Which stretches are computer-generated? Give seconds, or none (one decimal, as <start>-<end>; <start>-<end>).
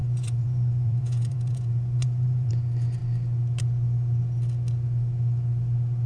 0.0-2.5